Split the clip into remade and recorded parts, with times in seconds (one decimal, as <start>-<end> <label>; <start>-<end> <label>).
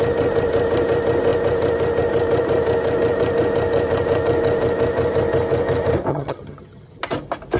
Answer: 0.0-6.1 recorded; 6.1-7.0 remade; 7.0-7.6 recorded